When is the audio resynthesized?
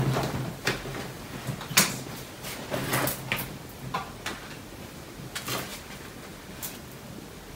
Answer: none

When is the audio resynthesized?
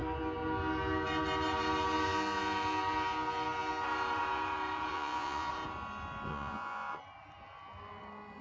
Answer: 4.9-5.5; 6.3-7.0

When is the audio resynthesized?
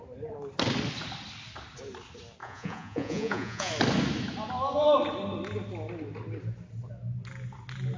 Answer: 2.4-3.7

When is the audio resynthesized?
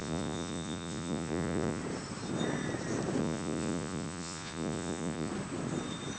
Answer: 0.0-1.8; 3.2-5.3